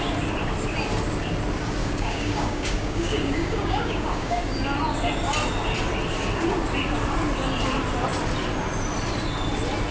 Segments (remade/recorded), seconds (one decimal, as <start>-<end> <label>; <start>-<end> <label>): 0.0-1.8 recorded; 1.8-4.4 remade; 4.4-9.9 recorded